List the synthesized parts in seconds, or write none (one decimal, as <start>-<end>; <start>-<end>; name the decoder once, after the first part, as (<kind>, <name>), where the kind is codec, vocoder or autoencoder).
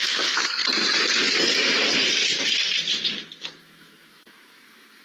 0.0-0.6 (autoencoder, DAC-VAE); 3.6-5.0